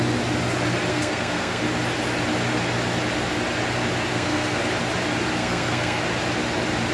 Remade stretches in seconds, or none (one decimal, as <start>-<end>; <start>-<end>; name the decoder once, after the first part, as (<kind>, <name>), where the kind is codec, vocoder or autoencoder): 0.9-1.6 (codec, SNAC); 4.1-4.6; 5.4-6.0